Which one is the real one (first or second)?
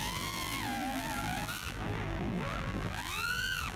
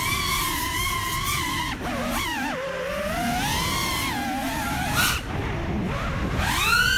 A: second